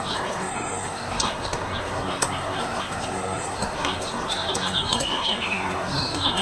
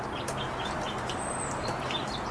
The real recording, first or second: second